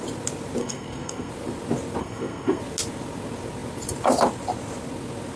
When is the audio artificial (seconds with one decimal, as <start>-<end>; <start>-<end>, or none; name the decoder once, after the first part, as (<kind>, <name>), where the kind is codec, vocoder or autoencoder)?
0.6-1.3 (codec, SNAC); 2.0-2.6